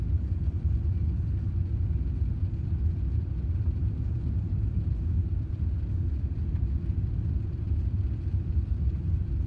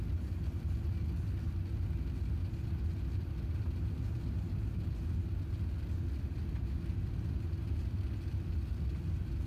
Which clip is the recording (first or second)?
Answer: second